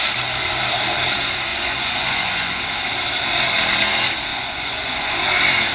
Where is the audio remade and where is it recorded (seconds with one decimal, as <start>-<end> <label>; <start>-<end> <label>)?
0.0-1.5 recorded; 1.5-2.6 remade; 2.6-4.3 recorded; 4.3-5.2 remade; 5.2-5.7 recorded